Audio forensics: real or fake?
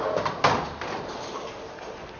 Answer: real